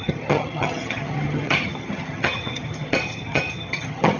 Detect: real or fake fake